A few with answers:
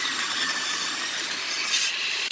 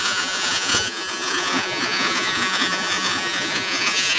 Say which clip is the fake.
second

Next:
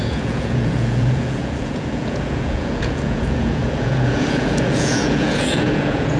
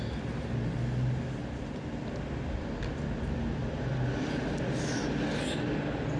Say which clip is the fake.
first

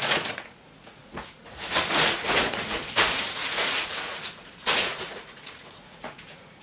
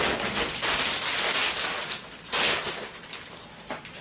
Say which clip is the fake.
first